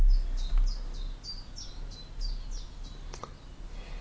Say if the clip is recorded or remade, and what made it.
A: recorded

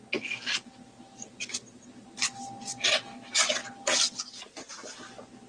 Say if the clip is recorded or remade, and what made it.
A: recorded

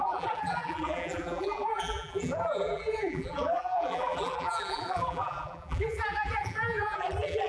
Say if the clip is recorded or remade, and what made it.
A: remade, vocoder, BigVGAN v2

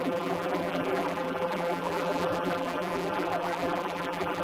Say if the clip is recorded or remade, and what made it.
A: remade, vocoder, BigVGAN v2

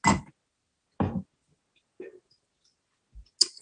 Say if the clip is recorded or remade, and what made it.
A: recorded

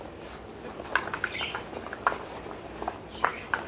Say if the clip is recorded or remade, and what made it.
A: recorded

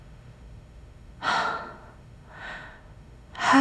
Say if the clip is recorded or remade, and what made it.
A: remade, autoencoder, DAC-VAE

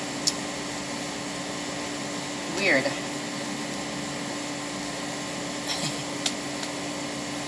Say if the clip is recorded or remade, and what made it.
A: recorded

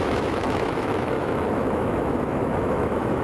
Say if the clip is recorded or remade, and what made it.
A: remade, autoencoder, DAC-VAE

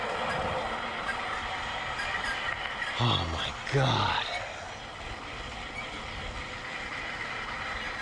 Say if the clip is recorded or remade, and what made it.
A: recorded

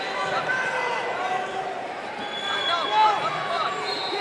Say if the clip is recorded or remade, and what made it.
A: recorded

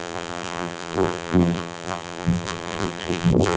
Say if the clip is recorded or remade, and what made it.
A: remade, vocoder, BigVGAN v2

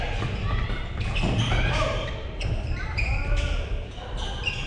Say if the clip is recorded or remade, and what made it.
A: recorded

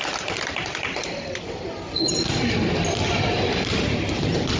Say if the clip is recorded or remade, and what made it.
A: recorded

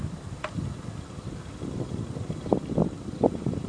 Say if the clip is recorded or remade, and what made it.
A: remade, vocoder, BigVGAN v2